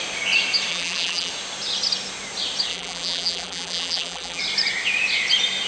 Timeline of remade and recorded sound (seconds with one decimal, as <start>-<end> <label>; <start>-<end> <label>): 0.0-0.7 recorded; 0.7-1.3 remade; 1.3-2.7 recorded; 2.7-4.4 remade; 4.4-5.7 recorded